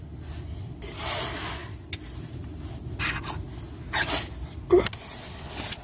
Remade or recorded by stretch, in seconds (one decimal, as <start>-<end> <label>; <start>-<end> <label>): 0.0-5.8 recorded